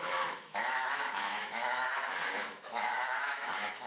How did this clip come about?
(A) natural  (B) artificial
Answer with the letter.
B